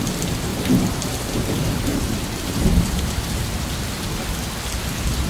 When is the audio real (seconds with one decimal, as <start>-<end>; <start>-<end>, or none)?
0.0-0.5; 1.4-1.9; 3.9-5.3